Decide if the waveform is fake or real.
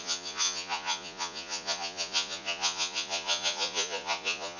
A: fake